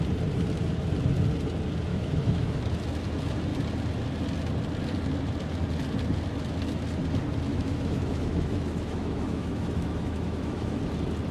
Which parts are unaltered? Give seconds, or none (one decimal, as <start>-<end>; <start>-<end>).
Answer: 0.0-1.9; 2.6-7.5; 10.8-11.3